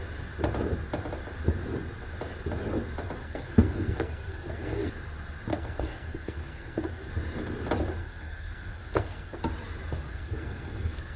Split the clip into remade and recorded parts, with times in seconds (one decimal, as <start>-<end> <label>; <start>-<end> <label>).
0.0-3.2 recorded; 3.2-4.9 remade; 4.9-5.5 recorded; 5.5-7.1 remade; 7.1-8.0 recorded; 8.0-9.4 remade; 9.4-10.1 recorded; 10.1-11.2 remade